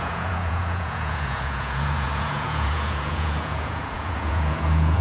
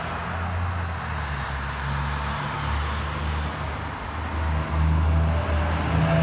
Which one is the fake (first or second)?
first